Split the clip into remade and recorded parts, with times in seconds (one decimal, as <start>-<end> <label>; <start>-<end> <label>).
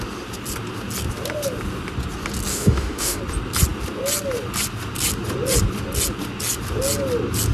0.0-2.5 recorded; 2.5-3.2 remade; 3.2-7.5 recorded